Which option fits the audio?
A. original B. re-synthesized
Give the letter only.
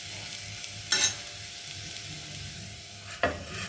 A